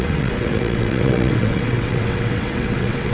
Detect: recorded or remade remade